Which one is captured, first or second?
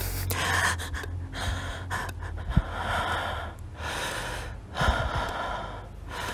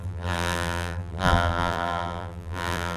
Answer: first